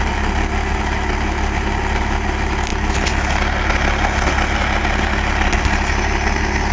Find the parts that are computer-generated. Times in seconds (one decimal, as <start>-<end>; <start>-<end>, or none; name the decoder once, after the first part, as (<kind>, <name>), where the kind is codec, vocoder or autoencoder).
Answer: none